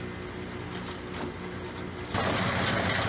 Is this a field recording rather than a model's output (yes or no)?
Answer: yes